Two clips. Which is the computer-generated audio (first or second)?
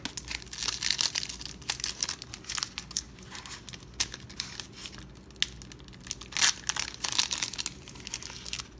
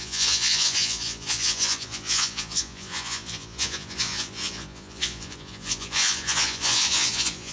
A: second